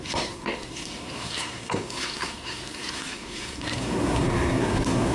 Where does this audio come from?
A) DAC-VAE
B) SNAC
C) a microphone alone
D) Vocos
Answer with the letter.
B